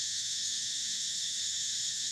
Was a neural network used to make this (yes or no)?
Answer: yes